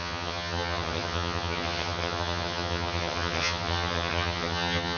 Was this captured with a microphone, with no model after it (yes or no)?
no